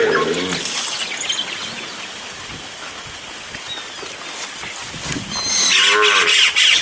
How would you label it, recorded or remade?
recorded